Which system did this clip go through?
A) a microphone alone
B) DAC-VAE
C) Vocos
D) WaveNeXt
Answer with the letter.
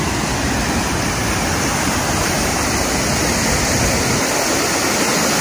A